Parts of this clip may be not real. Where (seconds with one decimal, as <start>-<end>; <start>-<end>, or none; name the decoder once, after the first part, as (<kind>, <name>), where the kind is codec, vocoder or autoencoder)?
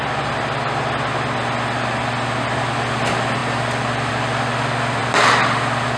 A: none